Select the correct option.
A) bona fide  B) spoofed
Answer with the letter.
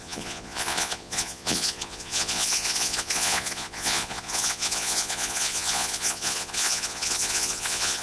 B